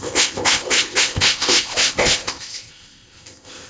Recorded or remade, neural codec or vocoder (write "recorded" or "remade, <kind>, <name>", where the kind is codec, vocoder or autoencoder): remade, codec, ZipCodec